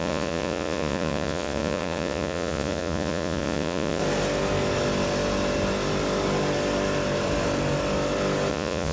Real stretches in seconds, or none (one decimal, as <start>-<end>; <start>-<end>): 4.0-8.5